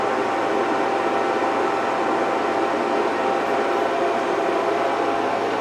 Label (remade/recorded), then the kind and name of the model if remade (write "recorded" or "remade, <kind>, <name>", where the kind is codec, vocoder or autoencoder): recorded